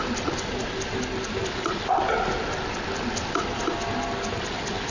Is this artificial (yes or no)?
no